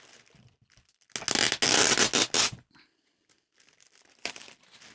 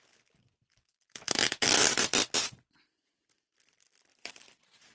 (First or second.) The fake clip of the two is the second